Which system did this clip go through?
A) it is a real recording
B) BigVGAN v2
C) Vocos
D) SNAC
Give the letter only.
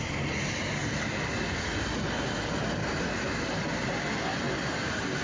B